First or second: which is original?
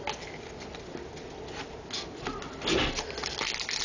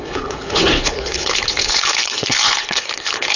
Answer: first